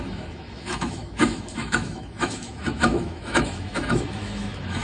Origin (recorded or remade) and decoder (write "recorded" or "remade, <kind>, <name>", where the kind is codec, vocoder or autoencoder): remade, autoencoder, DAC-VAE